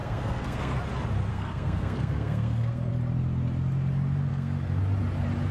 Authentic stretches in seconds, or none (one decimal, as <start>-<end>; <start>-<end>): 0.8-1.3; 2.9-4.3; 4.8-5.5